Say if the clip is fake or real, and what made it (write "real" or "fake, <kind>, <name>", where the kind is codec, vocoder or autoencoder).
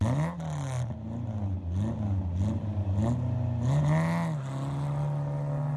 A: real